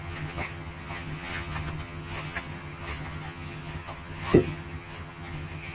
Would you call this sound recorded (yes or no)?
no